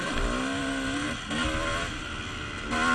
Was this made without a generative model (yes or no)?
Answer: yes